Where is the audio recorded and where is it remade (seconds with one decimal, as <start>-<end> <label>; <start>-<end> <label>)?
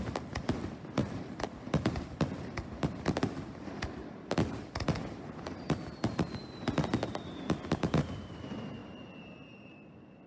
0.0-6.4 remade; 6.4-7.0 recorded; 7.0-10.3 remade